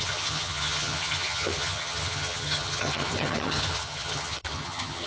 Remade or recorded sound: remade